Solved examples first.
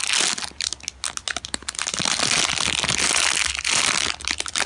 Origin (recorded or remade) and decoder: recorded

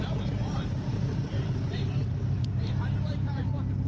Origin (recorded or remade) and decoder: remade, vocoder, BigVGAN v2